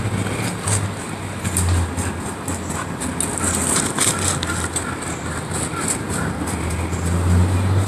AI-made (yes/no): no